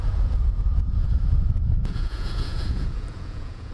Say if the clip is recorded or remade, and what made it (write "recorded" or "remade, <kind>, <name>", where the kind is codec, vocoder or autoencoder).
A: remade, vocoder, Vocos